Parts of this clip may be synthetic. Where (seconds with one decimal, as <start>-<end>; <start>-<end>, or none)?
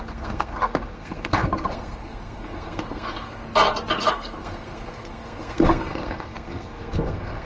0.0-3.4; 4.1-7.4